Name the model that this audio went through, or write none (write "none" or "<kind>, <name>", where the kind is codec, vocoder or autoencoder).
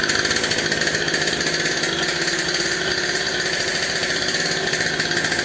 none